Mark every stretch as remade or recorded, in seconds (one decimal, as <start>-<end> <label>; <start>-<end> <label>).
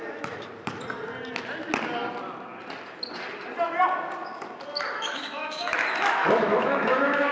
0.0-0.5 remade; 0.5-4.9 recorded; 4.9-7.3 remade